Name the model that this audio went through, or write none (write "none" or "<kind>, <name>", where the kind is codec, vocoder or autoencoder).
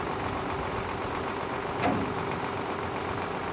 none